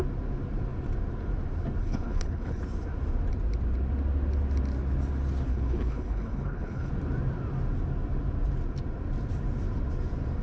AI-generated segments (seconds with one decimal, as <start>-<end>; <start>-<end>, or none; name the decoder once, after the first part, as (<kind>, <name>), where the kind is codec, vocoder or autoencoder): 1.8-2.6 (codec, HILCodec); 5.5-6.9